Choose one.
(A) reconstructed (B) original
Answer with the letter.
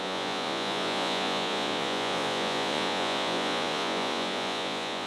A